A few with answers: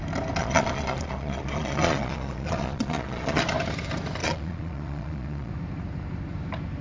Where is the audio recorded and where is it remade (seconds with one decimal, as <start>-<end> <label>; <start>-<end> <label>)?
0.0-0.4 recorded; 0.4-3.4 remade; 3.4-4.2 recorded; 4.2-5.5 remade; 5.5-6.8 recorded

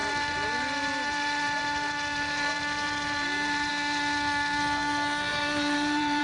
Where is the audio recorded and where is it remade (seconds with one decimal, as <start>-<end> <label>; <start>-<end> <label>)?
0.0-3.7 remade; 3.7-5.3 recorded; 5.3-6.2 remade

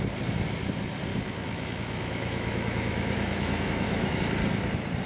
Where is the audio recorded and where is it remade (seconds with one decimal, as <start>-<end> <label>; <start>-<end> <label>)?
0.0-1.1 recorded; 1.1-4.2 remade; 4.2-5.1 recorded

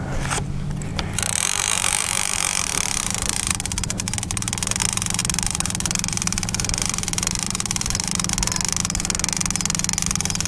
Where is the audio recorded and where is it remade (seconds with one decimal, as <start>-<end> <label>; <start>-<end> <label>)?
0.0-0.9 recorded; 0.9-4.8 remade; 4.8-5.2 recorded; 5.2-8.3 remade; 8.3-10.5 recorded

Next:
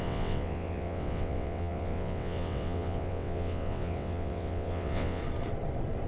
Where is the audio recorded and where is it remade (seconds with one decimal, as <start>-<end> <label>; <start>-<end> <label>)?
0.0-5.2 remade; 5.2-6.1 recorded

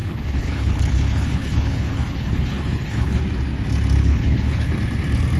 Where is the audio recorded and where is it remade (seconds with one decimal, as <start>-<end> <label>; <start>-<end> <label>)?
0.0-3.2 remade; 3.2-4.0 recorded; 4.0-4.7 remade; 4.7-5.4 recorded